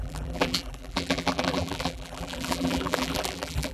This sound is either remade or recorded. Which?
remade